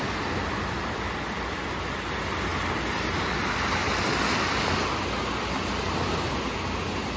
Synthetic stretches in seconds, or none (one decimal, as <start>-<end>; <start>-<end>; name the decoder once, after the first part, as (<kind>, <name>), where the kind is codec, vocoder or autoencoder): none